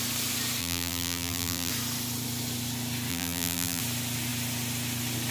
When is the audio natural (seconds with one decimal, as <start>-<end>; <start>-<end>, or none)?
0.0-0.6; 1.7-3.1; 3.8-5.3